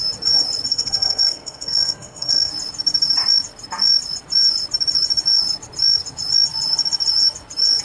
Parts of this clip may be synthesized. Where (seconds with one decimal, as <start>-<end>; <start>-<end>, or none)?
0.7-2.5